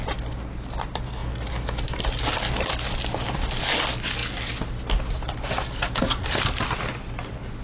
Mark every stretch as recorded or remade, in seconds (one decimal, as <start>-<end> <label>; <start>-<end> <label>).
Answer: 0.0-7.6 recorded